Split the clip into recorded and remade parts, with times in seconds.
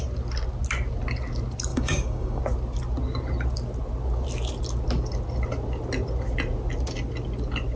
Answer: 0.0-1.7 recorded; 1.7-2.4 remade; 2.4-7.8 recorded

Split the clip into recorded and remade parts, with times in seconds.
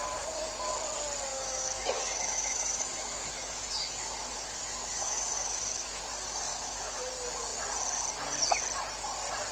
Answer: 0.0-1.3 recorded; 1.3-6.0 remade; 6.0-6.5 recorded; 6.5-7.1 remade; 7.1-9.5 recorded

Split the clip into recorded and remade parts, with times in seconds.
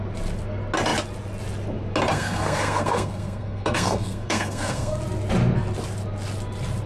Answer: 0.0-2.1 recorded; 2.1-5.0 remade; 5.0-6.9 recorded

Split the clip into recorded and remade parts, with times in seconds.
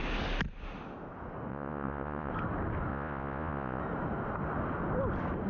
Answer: 0.0-1.5 recorded; 1.5-2.3 remade; 2.3-2.9 recorded; 2.9-3.8 remade; 3.8-5.5 recorded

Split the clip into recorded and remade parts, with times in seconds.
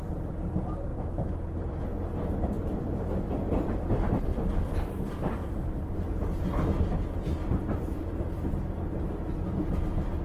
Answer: 0.0-0.9 remade; 0.9-3.7 recorded; 3.7-5.4 remade; 5.4-10.2 recorded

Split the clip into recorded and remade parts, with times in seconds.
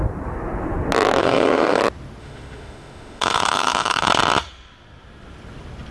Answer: 0.0-1.2 recorded; 1.2-1.8 remade; 1.8-2.2 recorded; 2.2-4.1 remade; 4.1-5.9 recorded